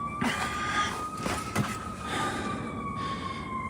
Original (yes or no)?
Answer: yes